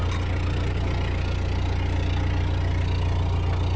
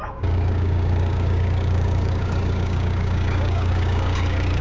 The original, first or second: first